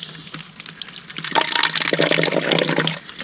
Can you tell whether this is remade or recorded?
recorded